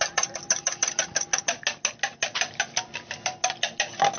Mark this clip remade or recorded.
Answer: recorded